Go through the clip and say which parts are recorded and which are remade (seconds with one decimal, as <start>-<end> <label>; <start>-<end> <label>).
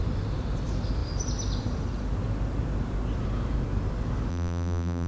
0.0-4.3 recorded; 4.3-5.1 remade